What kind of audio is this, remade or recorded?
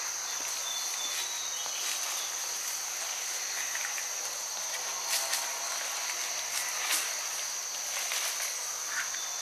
recorded